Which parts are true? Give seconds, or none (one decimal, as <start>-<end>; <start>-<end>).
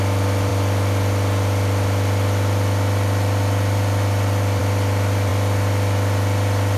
0.0-6.8